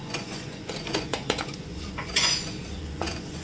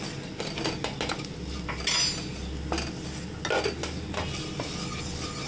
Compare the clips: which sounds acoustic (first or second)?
second